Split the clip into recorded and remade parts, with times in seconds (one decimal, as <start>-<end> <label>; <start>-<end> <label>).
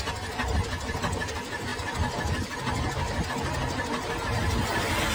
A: 0.0-5.1 recorded